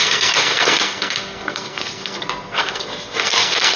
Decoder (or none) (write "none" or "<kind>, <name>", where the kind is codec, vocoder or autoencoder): codec, SNAC